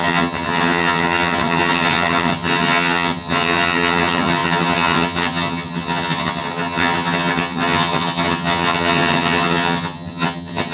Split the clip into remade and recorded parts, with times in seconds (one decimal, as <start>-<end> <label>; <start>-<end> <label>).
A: 0.0-10.7 remade